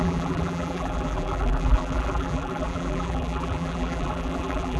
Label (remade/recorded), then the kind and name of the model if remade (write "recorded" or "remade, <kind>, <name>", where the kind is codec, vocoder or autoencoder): remade, vocoder, BigVGAN v2